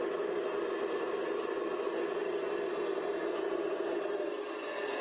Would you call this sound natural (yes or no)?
yes